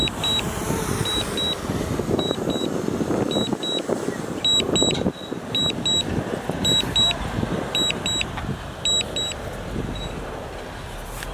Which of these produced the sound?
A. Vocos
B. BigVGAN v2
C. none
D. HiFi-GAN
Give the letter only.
C